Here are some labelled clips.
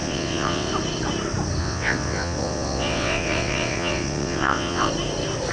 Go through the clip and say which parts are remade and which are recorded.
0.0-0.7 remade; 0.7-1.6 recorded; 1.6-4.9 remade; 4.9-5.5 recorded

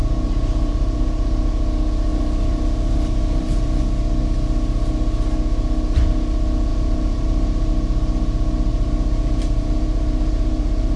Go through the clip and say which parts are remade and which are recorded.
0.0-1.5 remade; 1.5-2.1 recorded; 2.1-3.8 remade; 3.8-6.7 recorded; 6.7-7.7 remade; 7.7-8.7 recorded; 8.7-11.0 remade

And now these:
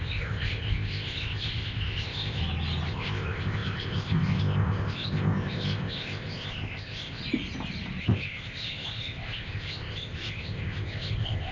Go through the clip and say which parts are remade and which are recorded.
0.0-2.4 remade; 2.4-2.9 recorded; 2.9-7.2 remade; 7.2-8.0 recorded; 8.0-11.5 remade

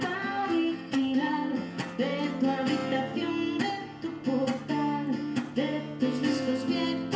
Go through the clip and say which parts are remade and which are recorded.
0.0-0.4 recorded; 0.4-1.5 remade; 1.5-7.2 recorded

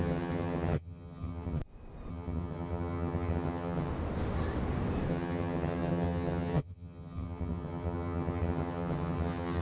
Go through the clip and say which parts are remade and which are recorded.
0.0-1.6 remade; 1.6-2.1 recorded; 2.1-3.9 remade; 3.9-5.1 recorded; 5.1-9.6 remade